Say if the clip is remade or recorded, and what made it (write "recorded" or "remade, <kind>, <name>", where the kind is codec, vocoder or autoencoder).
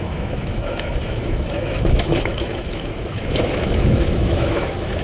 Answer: remade, autoencoder, DAC-VAE